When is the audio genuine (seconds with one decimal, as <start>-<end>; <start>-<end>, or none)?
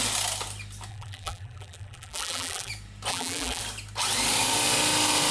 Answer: 0.0-0.9; 2.7-3.1; 3.6-5.3